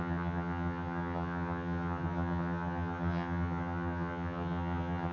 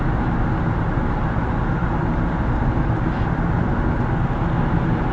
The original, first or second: second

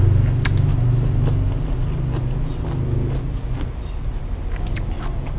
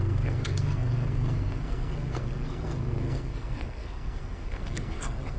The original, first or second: first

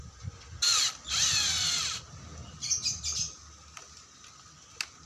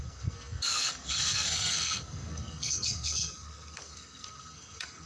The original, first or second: first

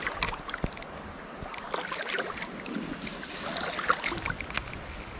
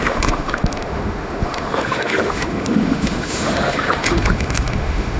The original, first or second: first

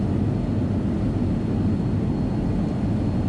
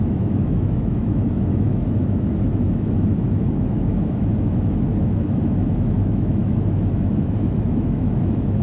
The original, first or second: first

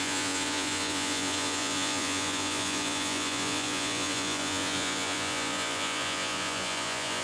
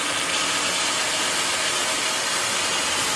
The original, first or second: second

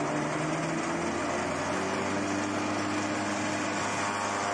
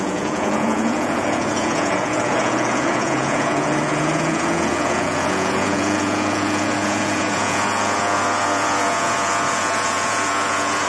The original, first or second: first